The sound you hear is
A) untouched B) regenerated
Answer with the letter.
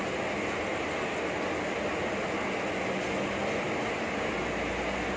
A